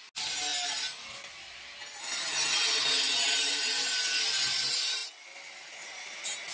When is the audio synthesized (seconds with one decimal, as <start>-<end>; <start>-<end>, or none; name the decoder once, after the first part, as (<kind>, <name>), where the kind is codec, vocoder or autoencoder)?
none